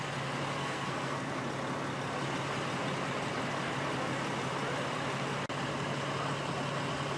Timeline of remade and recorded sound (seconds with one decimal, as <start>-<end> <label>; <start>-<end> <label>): 0.0-0.6 recorded; 0.6-1.4 remade; 1.4-7.2 recorded